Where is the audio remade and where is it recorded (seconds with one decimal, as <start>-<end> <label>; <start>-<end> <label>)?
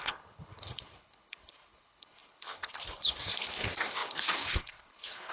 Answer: 0.0-5.3 remade